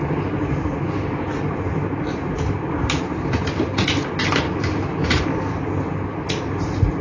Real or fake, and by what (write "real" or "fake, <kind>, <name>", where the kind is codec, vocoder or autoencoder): real